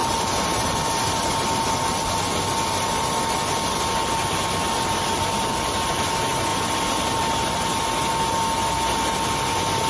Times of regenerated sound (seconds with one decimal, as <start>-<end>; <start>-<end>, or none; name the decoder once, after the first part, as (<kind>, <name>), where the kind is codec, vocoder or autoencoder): 0.0-0.9 (vocoder, BigVGAN v2)